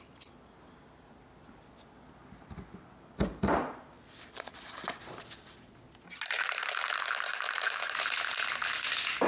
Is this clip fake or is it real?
real